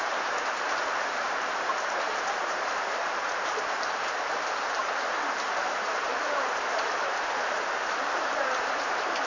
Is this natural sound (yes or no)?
no